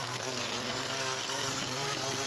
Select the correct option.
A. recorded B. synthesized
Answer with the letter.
B